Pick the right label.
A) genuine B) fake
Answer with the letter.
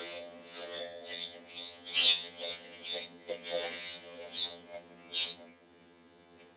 B